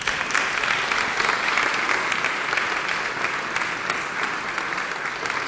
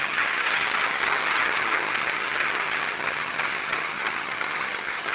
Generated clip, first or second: second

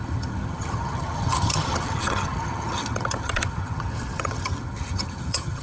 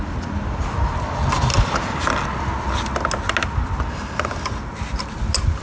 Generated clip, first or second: first